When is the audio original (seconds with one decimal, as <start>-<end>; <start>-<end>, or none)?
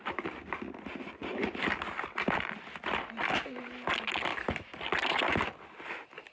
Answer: 0.0-1.2; 3.4-4.3